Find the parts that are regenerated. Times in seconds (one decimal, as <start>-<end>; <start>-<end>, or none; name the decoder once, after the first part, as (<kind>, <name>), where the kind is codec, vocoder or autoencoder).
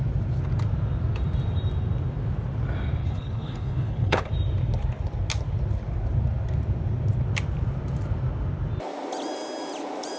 3.0-4.3 (codec, HILCodec)